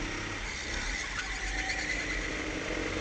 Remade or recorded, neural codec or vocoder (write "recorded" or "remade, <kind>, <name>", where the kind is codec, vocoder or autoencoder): recorded